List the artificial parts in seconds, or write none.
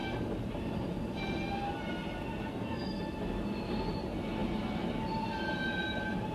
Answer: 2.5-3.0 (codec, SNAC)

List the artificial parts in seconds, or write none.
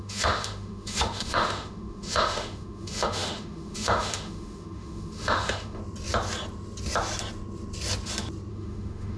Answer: 0.0-5.8 (autoencoder, DAC-VAE); 8.5-9.2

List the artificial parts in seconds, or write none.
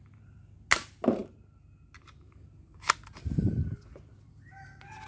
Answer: none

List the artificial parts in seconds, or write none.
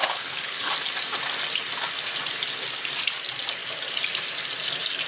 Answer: 0.0-0.7 (codec, HILCodec)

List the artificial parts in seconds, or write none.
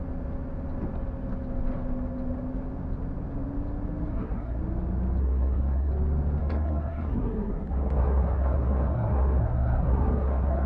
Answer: 4.1-4.6 (codec, SNAC); 5.2-5.9; 6.4-10.7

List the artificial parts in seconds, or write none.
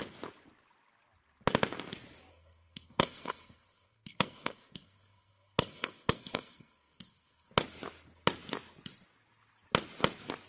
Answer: 2.3-7.5 (codec, SNAC)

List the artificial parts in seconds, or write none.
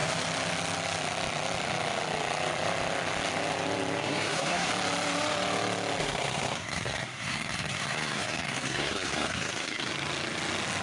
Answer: 4.0-4.7 (codec, SNAC); 6.0-9.9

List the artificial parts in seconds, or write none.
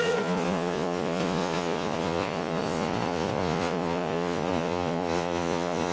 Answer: 0.0-5.9 (vocoder, Vocos)